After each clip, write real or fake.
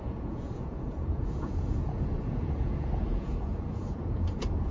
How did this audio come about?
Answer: fake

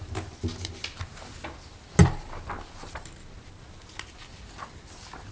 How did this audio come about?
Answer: real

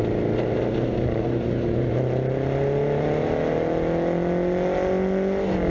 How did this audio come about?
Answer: real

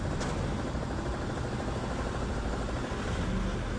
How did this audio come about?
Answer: real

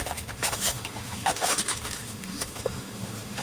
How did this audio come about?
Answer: fake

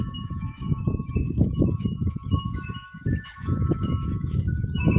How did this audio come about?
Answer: fake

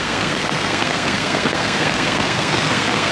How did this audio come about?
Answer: fake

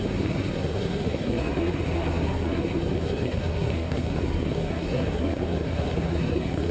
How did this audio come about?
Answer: fake